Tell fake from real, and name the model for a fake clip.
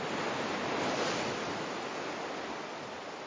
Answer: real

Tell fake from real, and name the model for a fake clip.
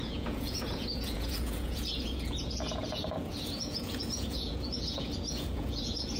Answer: fake, vocoder, Vocos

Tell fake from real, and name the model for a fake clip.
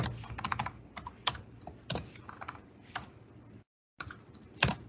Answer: real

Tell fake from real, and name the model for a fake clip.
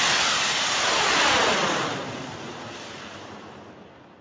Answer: fake, vocoder, BigVGAN v2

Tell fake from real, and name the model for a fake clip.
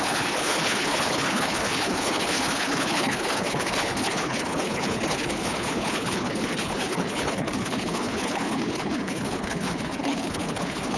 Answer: fake, codec, HILCodec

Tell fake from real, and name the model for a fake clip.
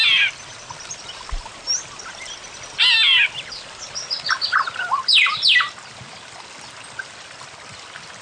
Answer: real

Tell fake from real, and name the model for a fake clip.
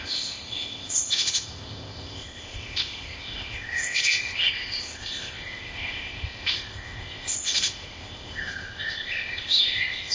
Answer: fake, codec, ZipCodec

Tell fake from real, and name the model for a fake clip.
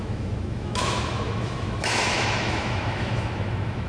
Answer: fake, autoencoder, DAC-VAE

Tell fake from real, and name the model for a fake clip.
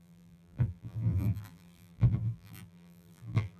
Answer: fake, vocoder, BigVGAN v2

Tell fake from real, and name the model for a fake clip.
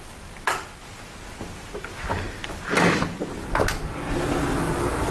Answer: real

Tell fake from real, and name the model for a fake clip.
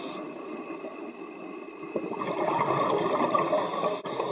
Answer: real